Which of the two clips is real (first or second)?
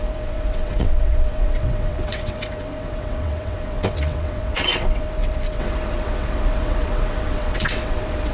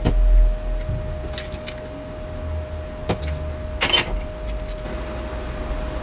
second